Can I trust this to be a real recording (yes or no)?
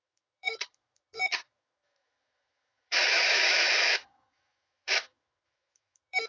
no